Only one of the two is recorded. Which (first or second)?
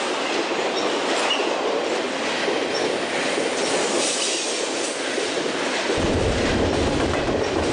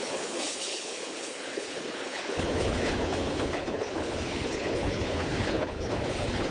first